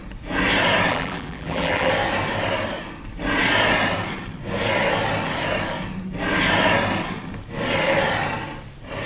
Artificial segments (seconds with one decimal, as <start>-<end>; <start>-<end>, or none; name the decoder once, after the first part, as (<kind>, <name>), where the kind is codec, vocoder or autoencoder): 0.9-1.9 (vocoder, BigVGAN v2)